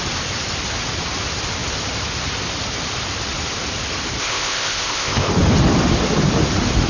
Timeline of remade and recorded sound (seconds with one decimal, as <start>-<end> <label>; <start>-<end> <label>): 0.0-4.2 recorded; 4.2-5.3 remade; 5.3-6.9 recorded